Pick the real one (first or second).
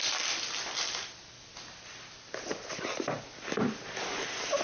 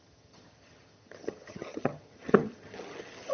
first